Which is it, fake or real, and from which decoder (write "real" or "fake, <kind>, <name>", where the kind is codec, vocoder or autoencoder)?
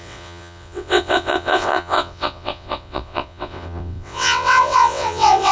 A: fake, vocoder, WaveNeXt